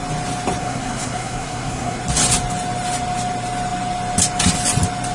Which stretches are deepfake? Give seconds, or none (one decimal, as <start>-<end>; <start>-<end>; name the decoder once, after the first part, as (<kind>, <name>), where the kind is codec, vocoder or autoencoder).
0.6-2.0 (codec, SNAC)